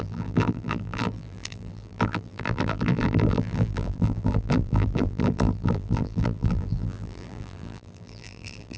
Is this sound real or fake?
fake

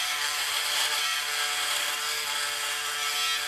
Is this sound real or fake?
real